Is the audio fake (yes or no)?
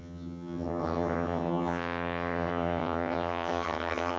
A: yes